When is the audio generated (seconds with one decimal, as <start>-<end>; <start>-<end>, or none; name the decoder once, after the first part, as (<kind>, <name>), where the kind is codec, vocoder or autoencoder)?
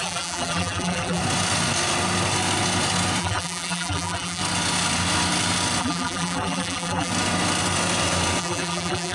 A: 0.0-1.2 (vocoder, BigVGAN v2); 3.2-4.4; 5.8-7.1; 8.4-9.1